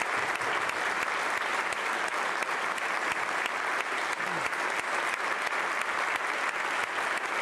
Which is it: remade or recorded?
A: recorded